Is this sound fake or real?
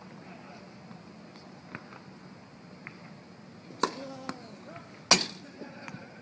real